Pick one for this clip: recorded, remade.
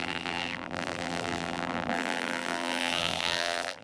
remade